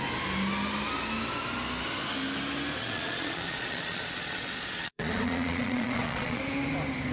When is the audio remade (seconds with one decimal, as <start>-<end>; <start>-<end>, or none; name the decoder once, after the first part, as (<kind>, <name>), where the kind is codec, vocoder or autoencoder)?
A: 2.8-6.4 (vocoder, Vocos)